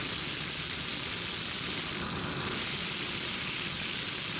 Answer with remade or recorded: recorded